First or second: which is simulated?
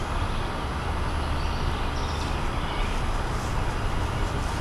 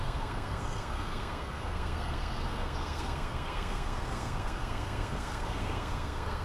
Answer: second